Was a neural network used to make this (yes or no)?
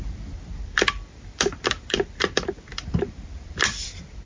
yes